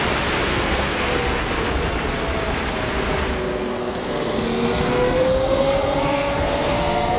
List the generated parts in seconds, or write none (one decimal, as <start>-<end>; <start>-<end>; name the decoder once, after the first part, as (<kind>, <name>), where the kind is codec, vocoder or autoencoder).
0.5-1.1 (codec, SNAC); 3.5-7.2